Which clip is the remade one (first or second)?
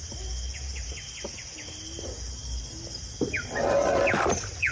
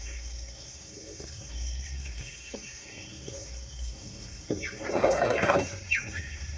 second